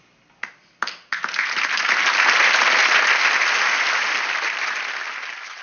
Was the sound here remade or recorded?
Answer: recorded